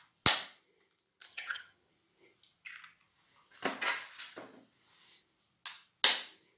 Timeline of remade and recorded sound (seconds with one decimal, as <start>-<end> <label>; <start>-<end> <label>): 0.0-1.3 recorded; 1.3-1.9 remade; 1.9-6.6 recorded

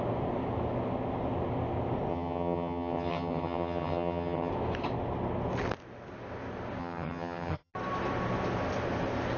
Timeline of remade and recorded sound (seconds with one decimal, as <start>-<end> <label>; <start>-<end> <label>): 0.0-2.1 recorded; 2.1-4.5 remade; 4.5-6.8 recorded; 6.8-7.7 remade; 7.7-9.4 recorded

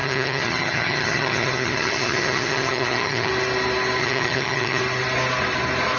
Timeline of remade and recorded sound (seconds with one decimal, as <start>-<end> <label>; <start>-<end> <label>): 0.0-3.3 remade; 3.3-4.0 recorded; 4.0-4.8 remade; 4.8-6.0 recorded

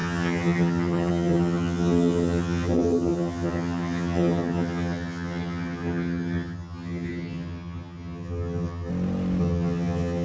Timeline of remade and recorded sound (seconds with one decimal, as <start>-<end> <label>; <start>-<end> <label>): 0.0-8.9 remade; 8.9-9.4 recorded; 9.4-10.2 remade

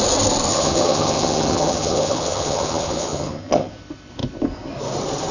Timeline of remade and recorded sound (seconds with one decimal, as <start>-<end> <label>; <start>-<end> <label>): 0.0-0.5 recorded; 0.5-3.7 remade; 3.7-5.3 recorded

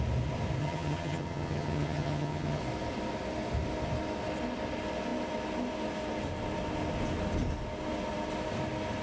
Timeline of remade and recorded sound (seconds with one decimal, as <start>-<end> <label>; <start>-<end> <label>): 0.0-0.6 recorded; 0.6-2.6 remade; 2.6-9.0 recorded